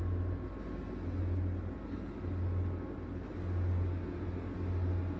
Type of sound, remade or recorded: recorded